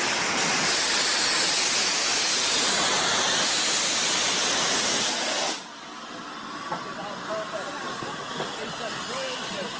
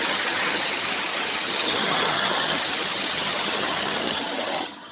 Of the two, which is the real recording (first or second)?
first